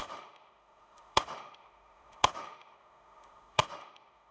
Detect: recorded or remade remade